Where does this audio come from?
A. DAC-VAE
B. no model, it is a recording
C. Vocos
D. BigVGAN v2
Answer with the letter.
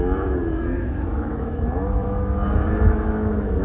A